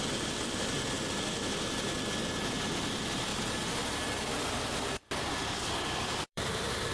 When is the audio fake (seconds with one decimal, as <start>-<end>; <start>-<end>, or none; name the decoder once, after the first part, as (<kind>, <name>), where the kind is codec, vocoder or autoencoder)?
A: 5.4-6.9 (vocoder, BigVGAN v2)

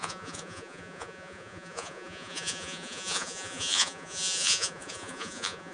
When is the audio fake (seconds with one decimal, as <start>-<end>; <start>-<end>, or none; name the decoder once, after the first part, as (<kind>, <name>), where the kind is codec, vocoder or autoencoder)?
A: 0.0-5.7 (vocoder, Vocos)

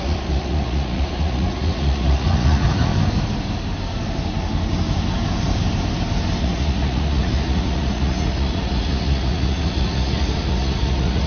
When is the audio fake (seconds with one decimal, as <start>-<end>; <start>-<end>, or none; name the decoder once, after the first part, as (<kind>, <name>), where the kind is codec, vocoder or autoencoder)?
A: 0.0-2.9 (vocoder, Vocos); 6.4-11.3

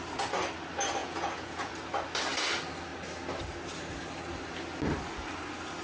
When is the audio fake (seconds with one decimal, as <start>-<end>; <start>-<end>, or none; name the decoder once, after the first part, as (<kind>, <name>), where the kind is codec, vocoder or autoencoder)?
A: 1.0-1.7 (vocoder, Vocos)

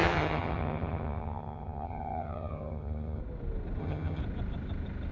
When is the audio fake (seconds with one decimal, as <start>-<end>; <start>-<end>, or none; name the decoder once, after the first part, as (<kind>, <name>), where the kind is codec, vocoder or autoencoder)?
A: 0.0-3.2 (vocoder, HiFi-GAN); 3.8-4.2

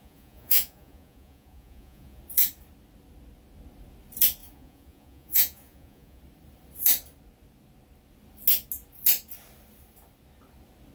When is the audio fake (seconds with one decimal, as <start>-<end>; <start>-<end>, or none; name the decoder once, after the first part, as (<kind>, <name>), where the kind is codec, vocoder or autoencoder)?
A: 0.0-2.2 (vocoder, Vocos); 4.4-6.2